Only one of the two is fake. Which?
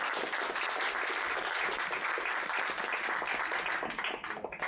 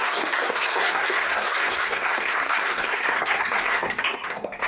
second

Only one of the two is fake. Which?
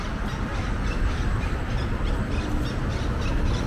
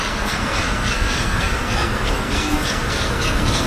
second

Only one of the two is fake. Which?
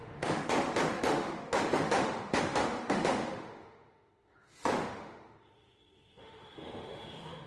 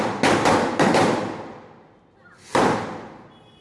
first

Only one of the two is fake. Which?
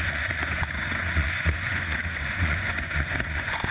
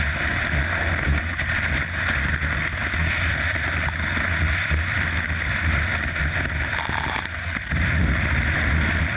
first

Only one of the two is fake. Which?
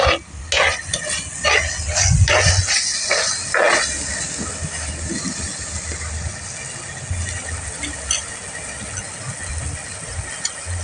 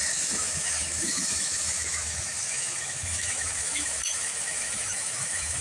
second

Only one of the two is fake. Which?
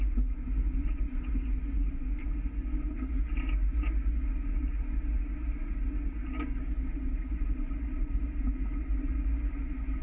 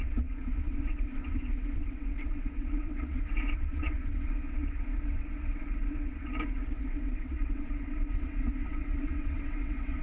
second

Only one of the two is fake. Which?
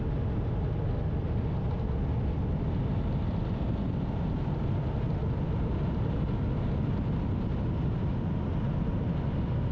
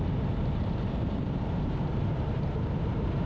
second